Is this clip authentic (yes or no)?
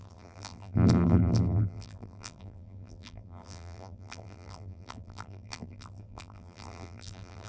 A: no